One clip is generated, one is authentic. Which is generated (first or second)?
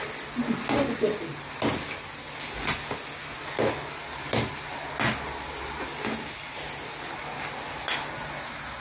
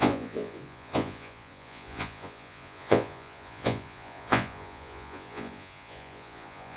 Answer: second